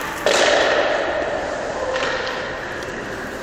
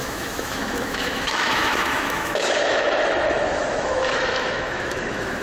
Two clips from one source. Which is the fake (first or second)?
second